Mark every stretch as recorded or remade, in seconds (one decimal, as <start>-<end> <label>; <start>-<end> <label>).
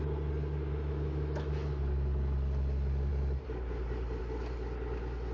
0.0-0.7 recorded; 0.7-1.8 remade; 1.8-5.3 recorded